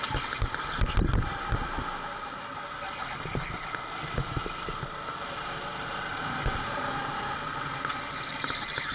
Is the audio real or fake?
real